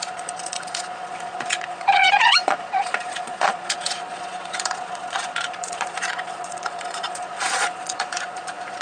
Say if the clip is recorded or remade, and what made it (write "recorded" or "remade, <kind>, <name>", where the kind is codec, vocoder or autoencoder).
remade, vocoder, Vocos